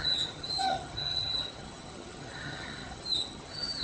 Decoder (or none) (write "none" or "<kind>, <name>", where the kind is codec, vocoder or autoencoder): vocoder, HiFi-GAN